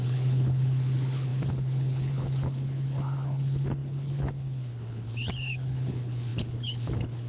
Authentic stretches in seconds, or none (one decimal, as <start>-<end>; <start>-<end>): none